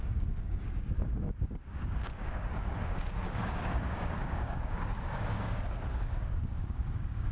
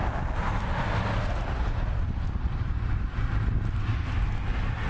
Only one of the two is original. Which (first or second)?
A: second